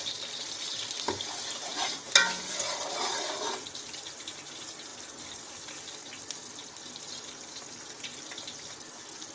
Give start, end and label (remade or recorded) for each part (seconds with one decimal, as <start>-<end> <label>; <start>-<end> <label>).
0.0-1.7 recorded; 1.7-2.2 remade; 2.2-9.3 recorded